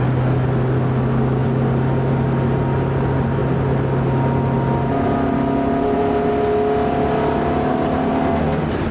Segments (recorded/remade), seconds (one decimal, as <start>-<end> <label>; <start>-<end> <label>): 0.0-8.9 recorded